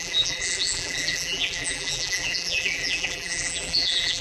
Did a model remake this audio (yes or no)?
yes